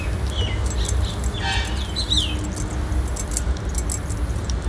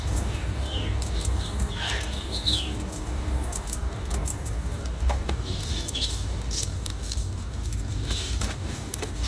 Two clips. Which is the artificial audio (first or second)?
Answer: second